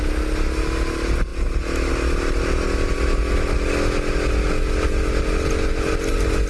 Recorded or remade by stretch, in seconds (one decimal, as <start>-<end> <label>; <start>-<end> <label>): 0.0-6.5 recorded